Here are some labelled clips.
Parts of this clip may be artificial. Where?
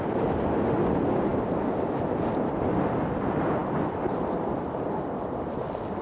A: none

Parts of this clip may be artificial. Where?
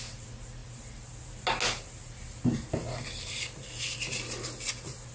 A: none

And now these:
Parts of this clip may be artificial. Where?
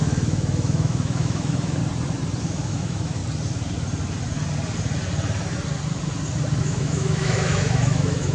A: 0.0-1.8 (autoencoder, DAC-VAE); 2.4-3.2; 6.6-8.3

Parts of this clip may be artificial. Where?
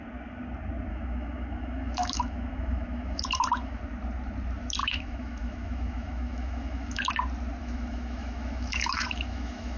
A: 0.9-3.8 (autoencoder, DAC-VAE); 4.8-7.1; 7.6-9.8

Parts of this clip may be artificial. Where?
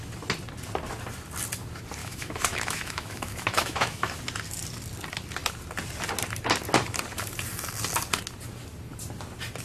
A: 2.0-4.2 (autoencoder, DAC-VAE)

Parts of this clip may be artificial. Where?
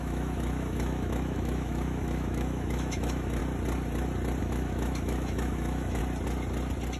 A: 0.0-3.4 (autoencoder, DAC-VAE); 4.4-6.0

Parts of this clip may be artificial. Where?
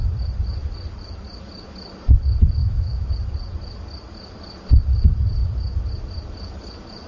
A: 2.6-3.1 (autoencoder, DAC-VAE)